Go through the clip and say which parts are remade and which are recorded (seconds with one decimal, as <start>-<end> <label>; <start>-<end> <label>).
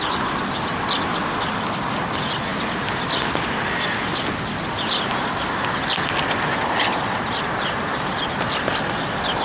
0.0-9.4 recorded